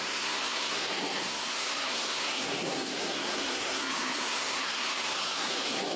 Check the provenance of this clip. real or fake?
fake